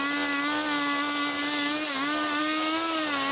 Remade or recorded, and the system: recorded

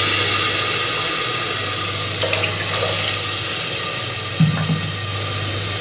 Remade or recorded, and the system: recorded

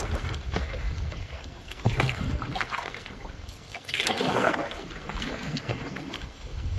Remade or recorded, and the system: remade, codec, SNAC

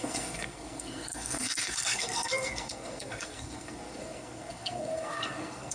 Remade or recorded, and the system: remade, codec, SNAC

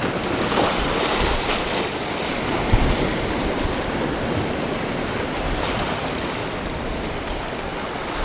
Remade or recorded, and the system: recorded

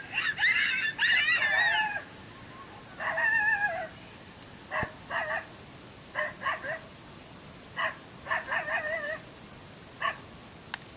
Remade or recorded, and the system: recorded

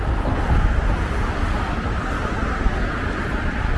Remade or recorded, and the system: recorded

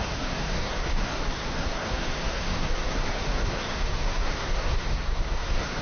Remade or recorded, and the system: remade, codec, SNAC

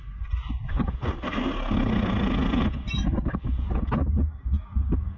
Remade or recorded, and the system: recorded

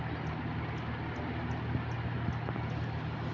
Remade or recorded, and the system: recorded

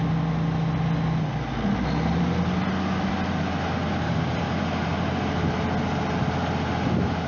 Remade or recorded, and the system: recorded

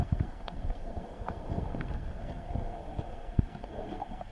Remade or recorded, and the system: remade, codec, SNAC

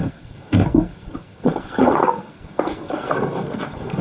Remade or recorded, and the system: remade, codec, SNAC